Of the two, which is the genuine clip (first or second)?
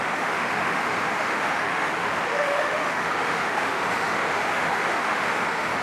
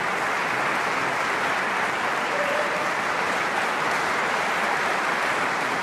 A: second